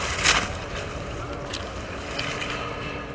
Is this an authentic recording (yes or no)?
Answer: yes